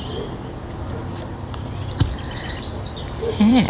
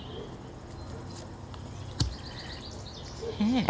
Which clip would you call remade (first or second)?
first